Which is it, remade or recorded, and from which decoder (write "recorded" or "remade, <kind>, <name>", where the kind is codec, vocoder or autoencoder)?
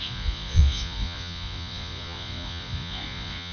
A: remade, vocoder, Vocos